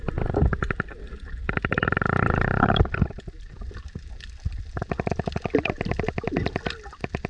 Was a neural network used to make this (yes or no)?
no